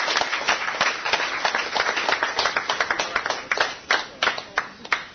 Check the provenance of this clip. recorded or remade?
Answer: recorded